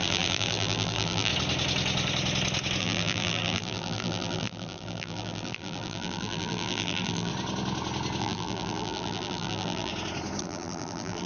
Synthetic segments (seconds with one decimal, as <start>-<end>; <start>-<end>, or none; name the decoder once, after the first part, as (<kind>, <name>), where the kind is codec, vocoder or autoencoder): 0.0-1.3 (vocoder, BigVGAN v2); 2.8-7.3; 8.2-9.9; 10.4-11.3